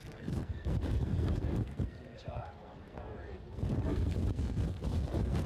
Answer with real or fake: fake